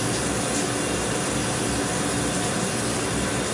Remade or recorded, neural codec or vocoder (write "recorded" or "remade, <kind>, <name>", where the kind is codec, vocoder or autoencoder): recorded